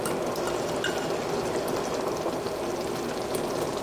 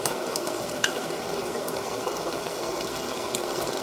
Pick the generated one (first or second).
second